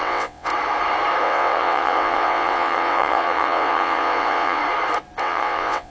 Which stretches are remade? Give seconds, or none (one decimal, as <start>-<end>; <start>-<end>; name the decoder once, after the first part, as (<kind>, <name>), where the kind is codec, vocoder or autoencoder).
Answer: 0.0-0.5 (vocoder, WaveNeXt); 1.2-4.6; 5.2-5.9